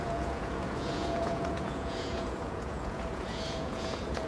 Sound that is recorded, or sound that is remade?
remade